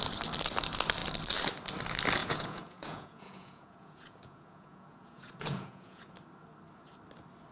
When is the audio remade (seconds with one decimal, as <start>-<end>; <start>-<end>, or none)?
2.2-6.1